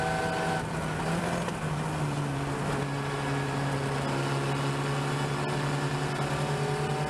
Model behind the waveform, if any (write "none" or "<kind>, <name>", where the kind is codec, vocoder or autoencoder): none